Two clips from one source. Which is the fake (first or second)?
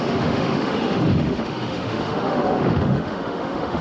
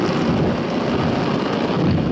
first